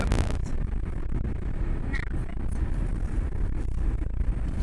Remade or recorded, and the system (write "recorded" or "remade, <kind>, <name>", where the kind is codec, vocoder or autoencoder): recorded